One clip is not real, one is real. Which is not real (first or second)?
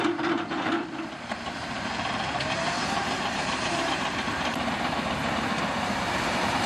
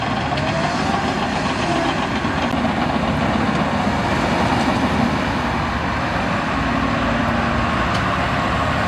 first